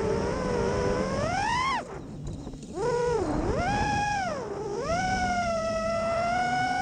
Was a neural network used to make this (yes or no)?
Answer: yes